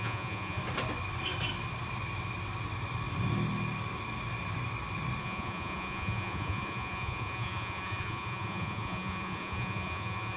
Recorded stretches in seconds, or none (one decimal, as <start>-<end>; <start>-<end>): 0.6-5.2